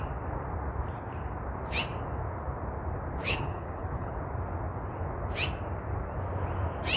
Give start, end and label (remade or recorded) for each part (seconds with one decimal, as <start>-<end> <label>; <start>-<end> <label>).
0.0-3.2 recorded; 3.2-4.1 remade; 4.1-7.0 recorded